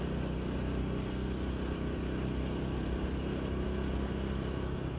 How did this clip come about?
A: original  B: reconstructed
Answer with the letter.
A